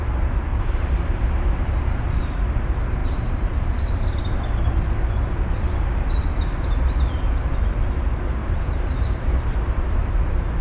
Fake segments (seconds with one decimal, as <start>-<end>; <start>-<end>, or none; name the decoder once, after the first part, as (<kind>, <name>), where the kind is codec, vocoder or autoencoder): 0.5-1.3 (vocoder, BigVGAN v2); 3.0-4.4; 8.4-10.1